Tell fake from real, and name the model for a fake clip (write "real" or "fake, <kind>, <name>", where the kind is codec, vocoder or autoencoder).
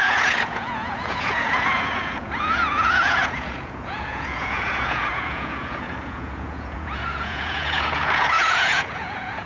fake, vocoder, Vocos